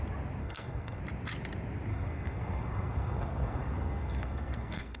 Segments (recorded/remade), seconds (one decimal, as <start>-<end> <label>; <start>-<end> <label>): 0.0-0.4 recorded; 0.4-1.0 remade; 1.0-1.9 recorded; 1.9-5.0 remade